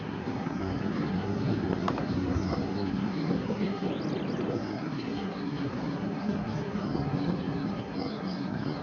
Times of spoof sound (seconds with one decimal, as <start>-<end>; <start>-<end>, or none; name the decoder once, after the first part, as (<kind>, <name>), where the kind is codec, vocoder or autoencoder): 0.0-3.9 (codec, SNAC); 4.5-8.8